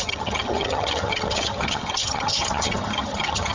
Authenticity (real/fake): fake